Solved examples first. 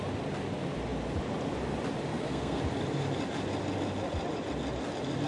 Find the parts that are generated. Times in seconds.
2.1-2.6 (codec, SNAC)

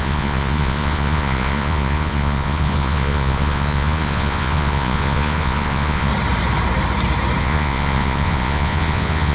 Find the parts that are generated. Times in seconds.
0.0-6.1 (vocoder, Vocos); 7.4-9.3

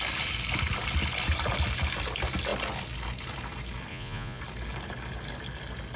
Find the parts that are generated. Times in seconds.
3.9-4.4 (vocoder, Vocos)

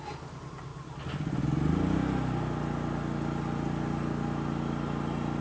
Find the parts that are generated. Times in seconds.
none